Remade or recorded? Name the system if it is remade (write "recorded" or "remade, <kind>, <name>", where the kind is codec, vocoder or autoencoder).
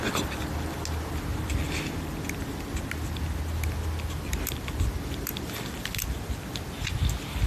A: recorded